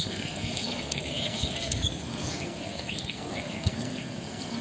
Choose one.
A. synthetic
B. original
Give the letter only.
A